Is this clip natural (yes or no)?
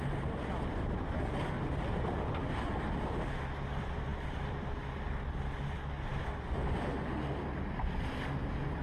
yes